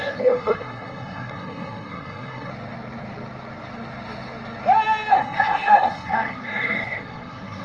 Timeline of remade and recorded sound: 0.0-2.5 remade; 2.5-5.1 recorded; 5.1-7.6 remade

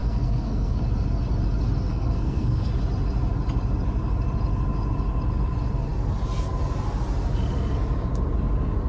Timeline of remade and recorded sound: 0.0-0.8 remade; 0.8-1.9 recorded; 1.9-2.7 remade; 2.7-8.9 recorded

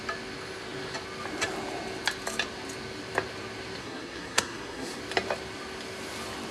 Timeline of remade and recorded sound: 0.0-3.8 recorded; 3.8-5.0 remade; 5.0-6.5 recorded